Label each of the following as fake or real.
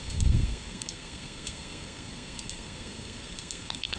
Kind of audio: fake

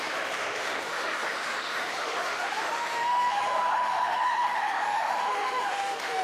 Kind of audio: fake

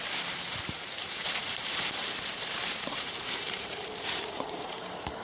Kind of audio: fake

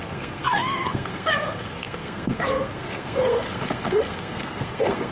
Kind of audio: fake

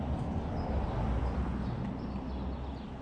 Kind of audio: real